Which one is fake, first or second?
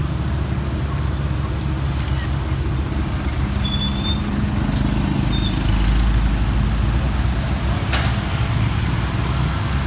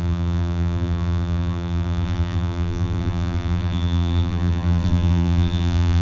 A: second